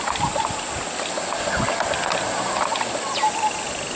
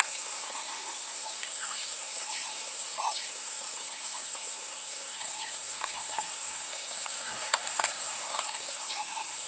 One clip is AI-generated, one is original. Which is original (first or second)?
first